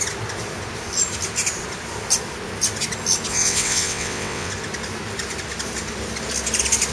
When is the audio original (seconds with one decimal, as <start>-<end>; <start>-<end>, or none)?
0.0-3.3; 4.5-6.9